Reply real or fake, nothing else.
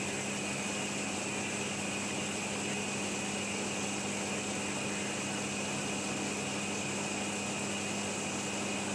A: real